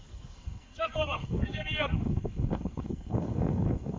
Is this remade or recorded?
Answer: remade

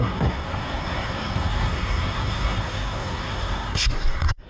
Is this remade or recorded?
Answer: remade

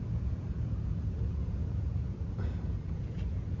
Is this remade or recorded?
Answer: remade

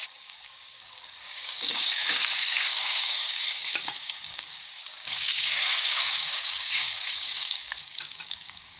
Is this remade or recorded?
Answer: remade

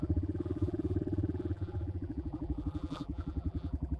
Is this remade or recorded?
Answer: remade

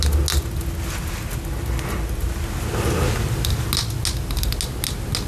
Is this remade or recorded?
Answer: recorded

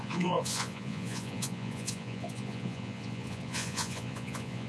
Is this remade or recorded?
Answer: remade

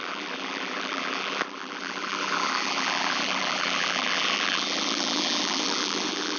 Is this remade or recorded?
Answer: remade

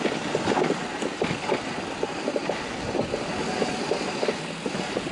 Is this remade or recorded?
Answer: recorded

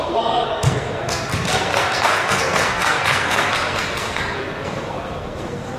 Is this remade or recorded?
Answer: remade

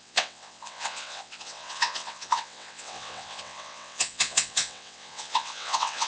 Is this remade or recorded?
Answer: remade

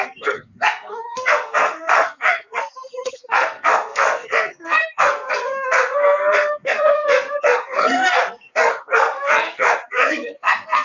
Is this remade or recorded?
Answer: remade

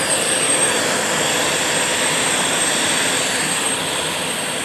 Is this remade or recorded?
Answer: recorded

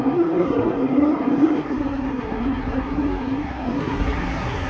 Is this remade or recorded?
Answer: remade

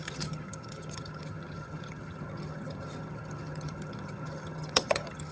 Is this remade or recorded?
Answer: remade